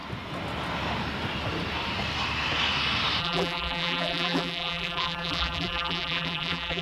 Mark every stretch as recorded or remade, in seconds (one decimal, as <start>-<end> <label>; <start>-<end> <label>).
0.0-3.2 recorded; 3.2-6.8 remade